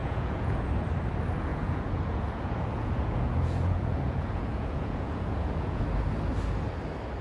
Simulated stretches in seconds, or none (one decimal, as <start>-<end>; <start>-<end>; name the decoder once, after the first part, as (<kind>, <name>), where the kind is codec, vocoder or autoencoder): 0.0-0.7 (vocoder, Vocos); 1.5-5.8